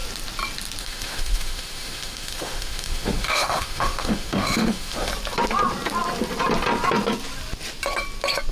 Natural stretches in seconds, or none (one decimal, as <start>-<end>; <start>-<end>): 0.0-0.8; 5.1-8.5